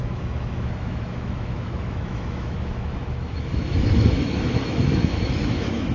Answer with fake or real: fake